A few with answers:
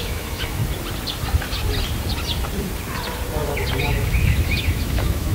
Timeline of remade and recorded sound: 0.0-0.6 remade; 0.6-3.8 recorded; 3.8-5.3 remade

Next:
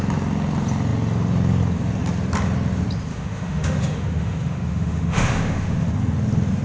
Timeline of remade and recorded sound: 0.0-3.1 recorded; 3.1-5.9 remade; 5.9-6.6 recorded

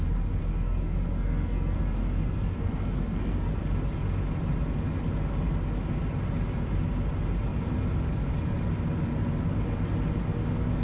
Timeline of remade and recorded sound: 0.0-0.4 recorded; 0.4-3.6 remade; 3.6-10.8 recorded

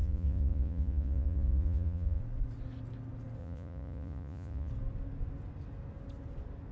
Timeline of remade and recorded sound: 0.0-2.2 remade; 2.2-3.4 recorded; 3.4-4.7 remade; 4.7-6.7 recorded

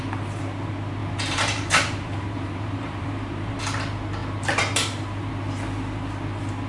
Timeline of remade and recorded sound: 0.0-1.0 recorded; 1.0-3.6 remade; 3.6-6.7 recorded

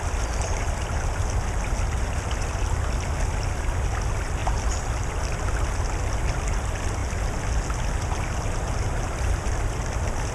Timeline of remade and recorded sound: 0.0-10.3 recorded

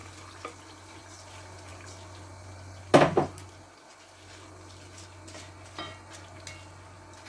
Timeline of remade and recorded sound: 0.0-7.3 recorded